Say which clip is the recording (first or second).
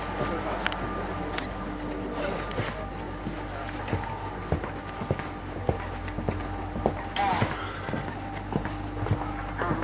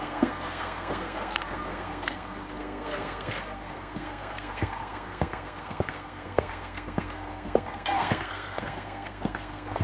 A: first